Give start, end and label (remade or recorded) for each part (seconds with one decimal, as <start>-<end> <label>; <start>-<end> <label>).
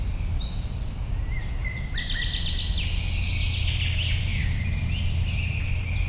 0.0-1.6 recorded; 1.6-2.6 remade; 2.6-4.3 recorded; 4.3-6.1 remade